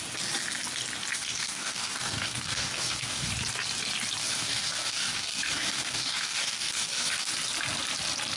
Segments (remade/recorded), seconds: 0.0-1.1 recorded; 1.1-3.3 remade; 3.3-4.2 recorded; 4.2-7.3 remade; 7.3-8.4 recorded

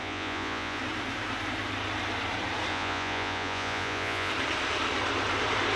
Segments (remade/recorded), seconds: 0.0-0.8 remade; 0.8-2.7 recorded; 2.7-4.3 remade; 4.3-5.8 recorded

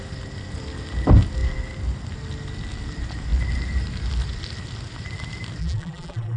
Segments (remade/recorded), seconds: 0.0-5.6 recorded; 5.6-6.4 remade

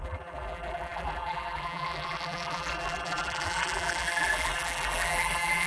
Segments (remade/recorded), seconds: 0.0-5.7 remade

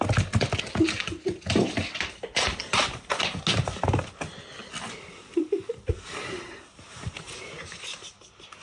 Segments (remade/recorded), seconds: 0.0-8.6 recorded

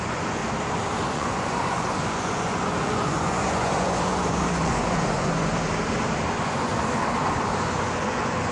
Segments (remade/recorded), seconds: 0.0-0.4 remade; 0.4-1.1 recorded; 1.1-5.5 remade; 5.5-6.3 recorded; 6.3-6.7 remade; 6.7-7.2 recorded; 7.2-8.5 remade

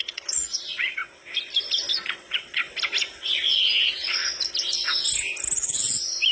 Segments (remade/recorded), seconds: 0.0-1.0 remade; 1.0-1.9 recorded; 1.9-2.6 remade; 2.6-3.2 recorded; 3.2-4.2 remade; 4.2-6.3 recorded